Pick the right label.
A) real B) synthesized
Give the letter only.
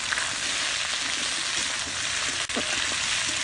A